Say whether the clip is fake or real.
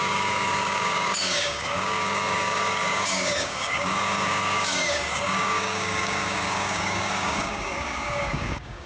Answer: fake